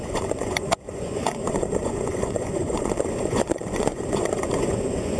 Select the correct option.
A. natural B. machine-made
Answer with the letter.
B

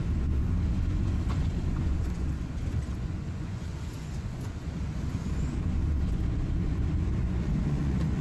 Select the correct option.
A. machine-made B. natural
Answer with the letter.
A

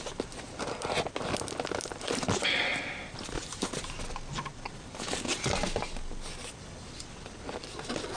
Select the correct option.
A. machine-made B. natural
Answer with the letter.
B